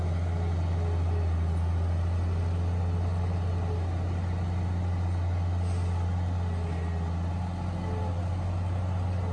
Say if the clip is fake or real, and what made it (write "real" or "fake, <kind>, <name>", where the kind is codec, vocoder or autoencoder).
real